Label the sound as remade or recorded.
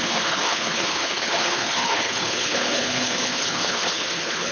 remade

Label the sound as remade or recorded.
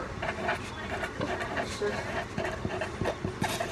recorded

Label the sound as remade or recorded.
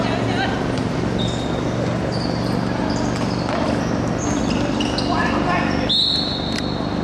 recorded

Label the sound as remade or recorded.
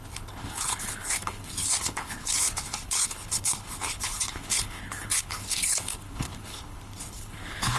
remade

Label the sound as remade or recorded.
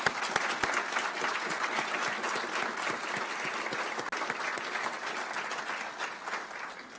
recorded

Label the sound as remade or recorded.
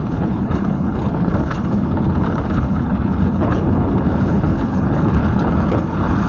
remade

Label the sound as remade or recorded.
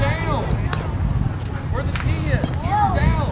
recorded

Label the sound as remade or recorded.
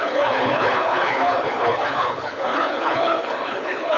remade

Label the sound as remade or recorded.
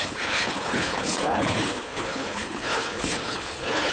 remade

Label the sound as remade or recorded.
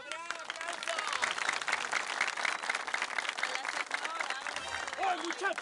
recorded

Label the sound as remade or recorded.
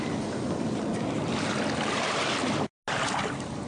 recorded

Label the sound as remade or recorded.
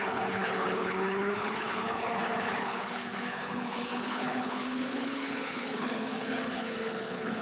remade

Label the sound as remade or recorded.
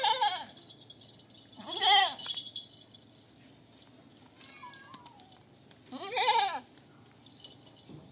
recorded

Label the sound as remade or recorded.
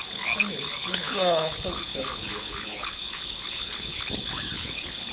remade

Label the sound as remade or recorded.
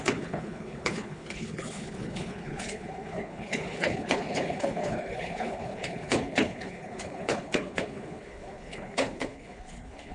remade